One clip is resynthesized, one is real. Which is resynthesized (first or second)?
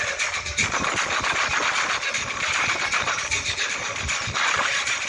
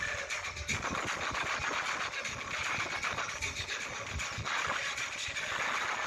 first